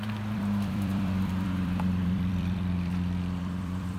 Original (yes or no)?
no